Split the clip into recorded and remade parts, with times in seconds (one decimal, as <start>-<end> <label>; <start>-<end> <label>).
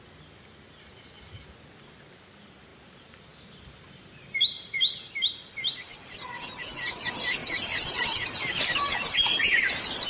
0.0-2.7 recorded; 2.7-5.8 remade; 5.8-7.4 recorded; 7.4-8.6 remade; 8.6-10.1 recorded